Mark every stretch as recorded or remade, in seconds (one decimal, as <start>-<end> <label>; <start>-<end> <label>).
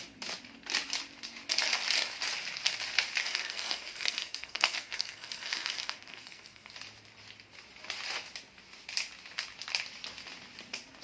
0.0-3.2 recorded; 3.2-6.7 remade; 6.7-11.0 recorded